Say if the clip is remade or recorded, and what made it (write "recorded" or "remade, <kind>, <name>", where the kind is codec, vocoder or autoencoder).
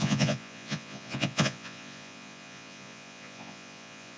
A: remade, vocoder, Vocos